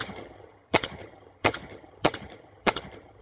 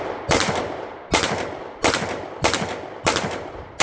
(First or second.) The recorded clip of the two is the second